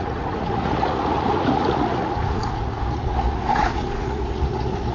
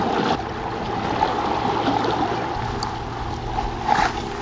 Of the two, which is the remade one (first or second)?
first